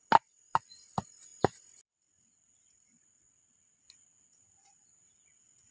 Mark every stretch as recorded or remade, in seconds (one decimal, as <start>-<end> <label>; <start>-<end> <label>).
0.0-5.7 recorded